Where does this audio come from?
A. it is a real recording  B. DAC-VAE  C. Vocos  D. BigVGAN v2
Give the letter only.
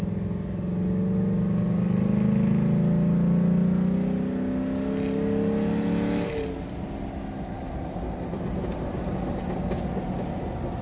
A